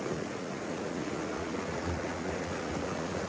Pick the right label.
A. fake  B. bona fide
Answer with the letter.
A